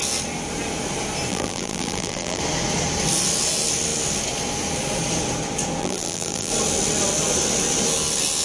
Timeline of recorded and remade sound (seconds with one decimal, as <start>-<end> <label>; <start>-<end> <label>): 0.0-1.3 recorded; 1.3-2.4 remade; 2.4-5.8 recorded; 5.8-6.5 remade; 6.5-8.4 recorded